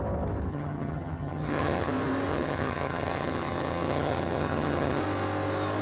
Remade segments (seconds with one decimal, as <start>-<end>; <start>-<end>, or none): 0.5-1.9; 2.3-5.0